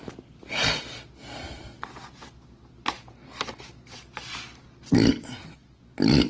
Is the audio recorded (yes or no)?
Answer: yes